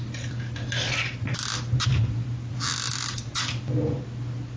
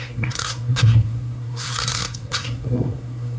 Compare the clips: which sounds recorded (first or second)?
first